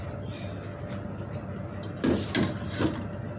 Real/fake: real